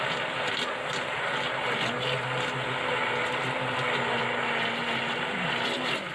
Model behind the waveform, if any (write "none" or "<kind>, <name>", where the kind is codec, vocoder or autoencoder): none